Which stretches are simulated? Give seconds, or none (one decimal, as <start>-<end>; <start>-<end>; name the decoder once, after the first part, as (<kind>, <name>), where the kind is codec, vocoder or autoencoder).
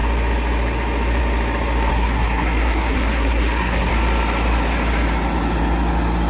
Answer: 1.9-3.9 (codec, SNAC)